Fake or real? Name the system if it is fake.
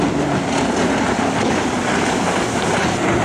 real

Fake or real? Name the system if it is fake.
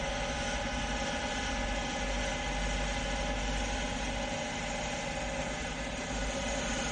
real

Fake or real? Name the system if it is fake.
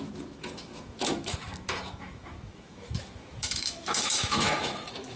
fake, autoencoder, DAC-VAE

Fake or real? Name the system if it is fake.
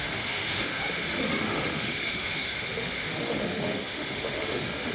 fake, autoencoder, DAC-VAE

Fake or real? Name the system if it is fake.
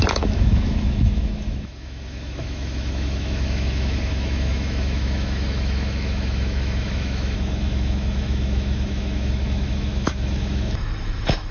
fake, autoencoder, DAC-VAE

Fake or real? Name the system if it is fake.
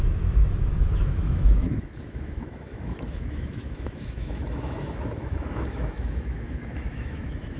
fake, autoencoder, DAC-VAE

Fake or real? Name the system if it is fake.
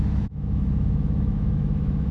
fake, autoencoder, DAC-VAE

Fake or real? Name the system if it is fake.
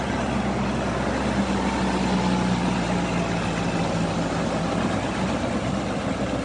real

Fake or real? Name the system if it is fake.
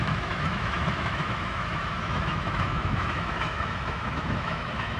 fake, autoencoder, DAC-VAE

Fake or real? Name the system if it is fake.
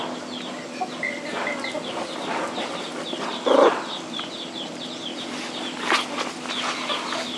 real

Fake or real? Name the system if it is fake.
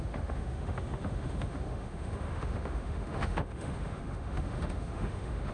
fake, autoencoder, DAC-VAE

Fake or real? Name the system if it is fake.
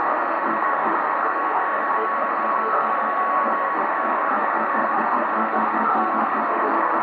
fake, autoencoder, DAC-VAE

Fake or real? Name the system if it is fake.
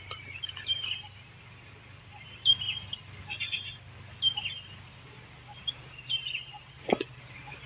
real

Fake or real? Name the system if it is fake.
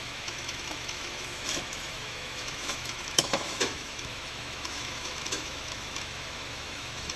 fake, autoencoder, DAC-VAE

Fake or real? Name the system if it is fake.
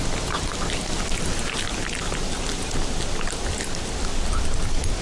real